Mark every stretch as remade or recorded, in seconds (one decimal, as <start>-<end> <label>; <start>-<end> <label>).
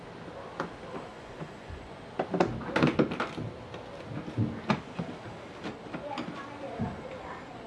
0.0-1.1 recorded; 1.1-2.0 remade; 2.0-7.7 recorded